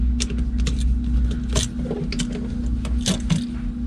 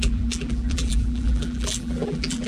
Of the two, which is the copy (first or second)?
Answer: second